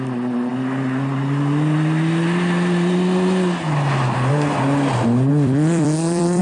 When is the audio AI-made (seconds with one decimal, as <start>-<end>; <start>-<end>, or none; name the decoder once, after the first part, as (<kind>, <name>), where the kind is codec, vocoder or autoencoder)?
5.3-6.4 (vocoder, BigVGAN v2)